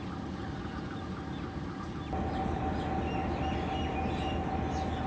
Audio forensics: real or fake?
real